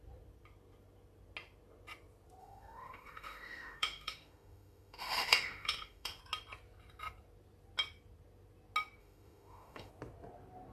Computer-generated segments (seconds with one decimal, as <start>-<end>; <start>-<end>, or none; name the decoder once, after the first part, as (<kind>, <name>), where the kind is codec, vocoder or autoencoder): 2.4-6.2 (autoencoder, DAC-VAE); 9.0-9.9

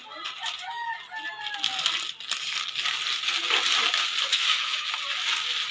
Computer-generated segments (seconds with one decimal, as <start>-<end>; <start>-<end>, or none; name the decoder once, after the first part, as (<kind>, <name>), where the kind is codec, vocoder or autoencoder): 4.3-4.9 (autoencoder, DAC-VAE)

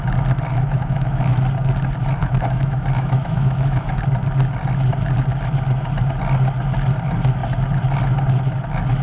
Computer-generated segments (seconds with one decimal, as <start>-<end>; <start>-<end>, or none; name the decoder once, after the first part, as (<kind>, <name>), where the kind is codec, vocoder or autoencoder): 0.5-1.4 (autoencoder, DAC-VAE); 2.2-4.0

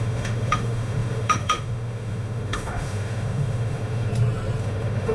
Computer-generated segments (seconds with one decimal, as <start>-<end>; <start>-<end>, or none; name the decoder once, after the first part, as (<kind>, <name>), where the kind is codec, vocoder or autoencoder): 0.0-4.1 (autoencoder, DAC-VAE); 4.6-5.1

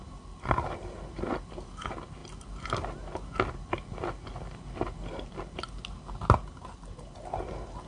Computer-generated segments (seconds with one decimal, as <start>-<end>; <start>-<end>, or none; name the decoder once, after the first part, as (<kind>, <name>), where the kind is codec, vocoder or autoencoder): none

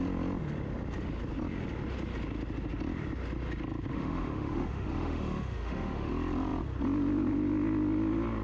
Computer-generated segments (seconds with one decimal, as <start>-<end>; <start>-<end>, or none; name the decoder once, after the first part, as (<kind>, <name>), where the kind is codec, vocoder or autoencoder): 3.9-6.1 (autoencoder, DAC-VAE)